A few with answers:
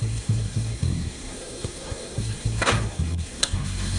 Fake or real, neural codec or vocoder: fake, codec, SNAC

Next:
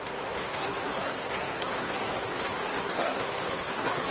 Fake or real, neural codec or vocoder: fake, codec, SNAC